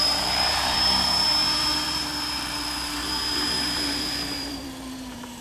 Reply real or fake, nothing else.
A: fake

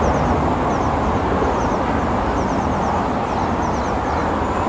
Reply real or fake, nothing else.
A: real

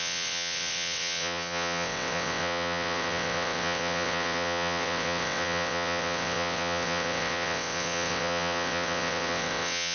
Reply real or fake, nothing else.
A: fake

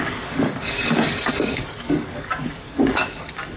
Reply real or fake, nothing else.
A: fake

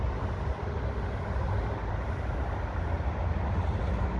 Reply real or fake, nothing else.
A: real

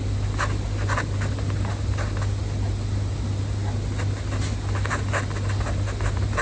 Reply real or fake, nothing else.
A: real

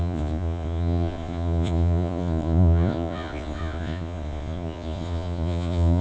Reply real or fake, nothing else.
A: fake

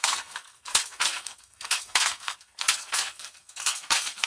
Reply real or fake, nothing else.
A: fake